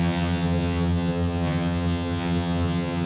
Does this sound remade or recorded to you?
remade